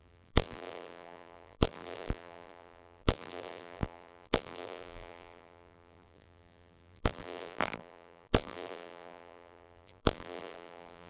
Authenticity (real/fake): fake